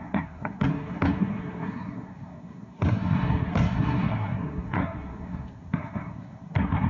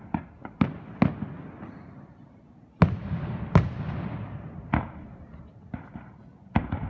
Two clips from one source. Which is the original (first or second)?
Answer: second